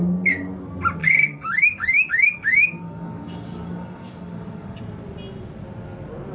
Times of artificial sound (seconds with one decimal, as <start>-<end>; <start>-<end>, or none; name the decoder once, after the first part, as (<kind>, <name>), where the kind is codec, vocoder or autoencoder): 1.0-4.8 (codec, DAC)